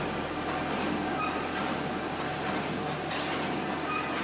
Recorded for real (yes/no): yes